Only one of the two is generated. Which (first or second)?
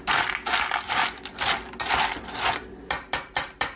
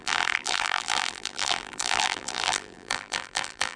second